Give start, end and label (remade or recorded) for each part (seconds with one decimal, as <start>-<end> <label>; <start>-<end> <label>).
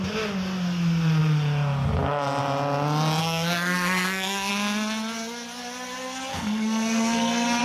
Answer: 0.0-3.2 recorded; 3.2-4.5 remade; 4.5-6.3 recorded; 6.3-7.6 remade